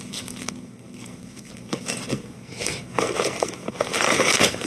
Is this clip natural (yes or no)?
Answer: no